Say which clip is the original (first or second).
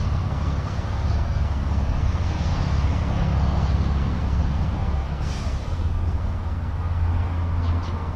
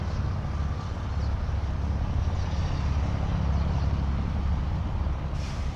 second